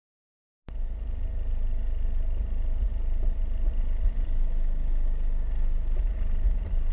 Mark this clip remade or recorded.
recorded